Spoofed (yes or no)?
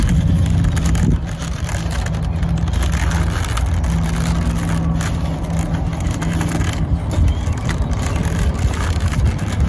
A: no